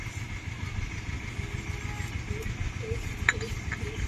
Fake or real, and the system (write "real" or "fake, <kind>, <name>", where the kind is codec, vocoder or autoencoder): real